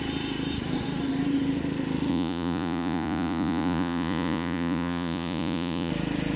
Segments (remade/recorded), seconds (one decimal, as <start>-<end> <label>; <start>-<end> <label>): 0.0-2.1 recorded; 2.1-5.9 remade; 5.9-6.4 recorded